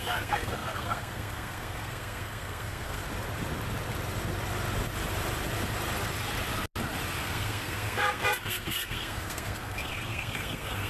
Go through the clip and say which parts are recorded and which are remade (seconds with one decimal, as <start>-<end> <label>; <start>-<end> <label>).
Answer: 0.0-3.0 remade; 3.0-7.2 recorded; 7.2-10.9 remade